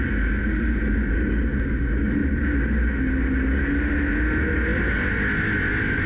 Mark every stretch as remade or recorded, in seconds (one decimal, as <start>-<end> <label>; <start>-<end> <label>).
0.0-6.1 recorded